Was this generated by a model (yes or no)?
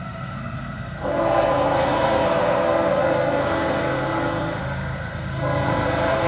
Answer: yes